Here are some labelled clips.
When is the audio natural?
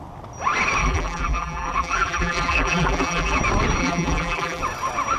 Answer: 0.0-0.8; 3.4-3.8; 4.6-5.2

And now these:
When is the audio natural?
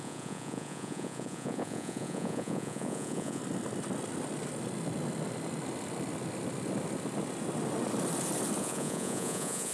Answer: 3.4-8.6